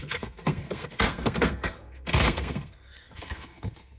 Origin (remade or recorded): remade